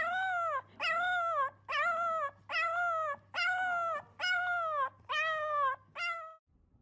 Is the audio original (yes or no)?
yes